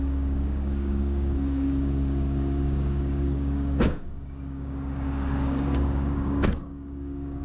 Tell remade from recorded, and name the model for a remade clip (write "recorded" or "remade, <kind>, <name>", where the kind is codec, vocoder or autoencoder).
remade, codec, DAC